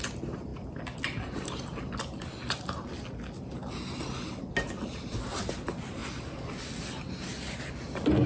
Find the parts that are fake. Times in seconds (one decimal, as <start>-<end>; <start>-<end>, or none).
none

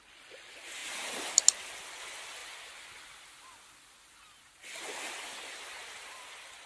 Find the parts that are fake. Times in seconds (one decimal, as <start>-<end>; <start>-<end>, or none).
none

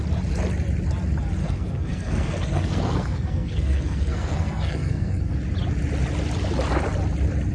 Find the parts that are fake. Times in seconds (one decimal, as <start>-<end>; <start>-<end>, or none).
1.4-5.3

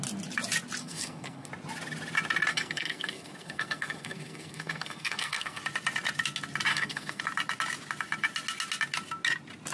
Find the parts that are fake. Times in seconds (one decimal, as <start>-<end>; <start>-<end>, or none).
0.8-1.5; 2.5-5.6; 6.7-7.2

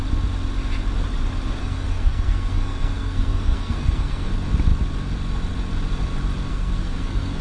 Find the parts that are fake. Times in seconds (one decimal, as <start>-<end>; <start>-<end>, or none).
1.6-4.3; 6.5-7.4

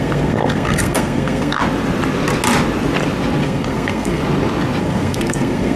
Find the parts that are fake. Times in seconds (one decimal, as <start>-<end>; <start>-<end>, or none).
0.0-1.6; 3.4-4.2; 4.8-5.8